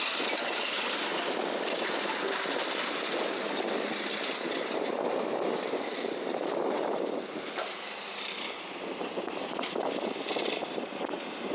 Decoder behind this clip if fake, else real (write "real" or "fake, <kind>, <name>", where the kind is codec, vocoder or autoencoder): fake, vocoder, BigVGAN v2